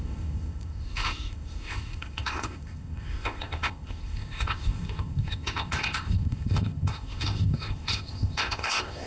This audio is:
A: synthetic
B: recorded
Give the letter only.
A